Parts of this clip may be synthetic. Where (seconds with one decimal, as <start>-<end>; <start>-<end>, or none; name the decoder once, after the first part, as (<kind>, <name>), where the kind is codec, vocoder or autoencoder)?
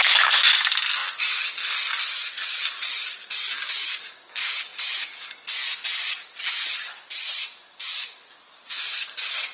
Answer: none